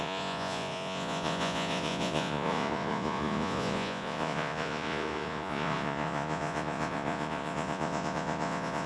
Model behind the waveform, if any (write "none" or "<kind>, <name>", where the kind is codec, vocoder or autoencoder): vocoder, Vocos